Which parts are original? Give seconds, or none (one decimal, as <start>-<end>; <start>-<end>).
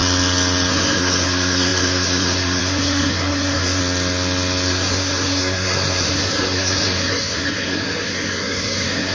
0.0-0.7; 3.8-4.7